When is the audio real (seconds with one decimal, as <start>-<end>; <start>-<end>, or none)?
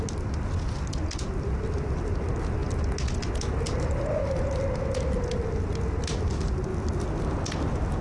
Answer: 0.0-8.0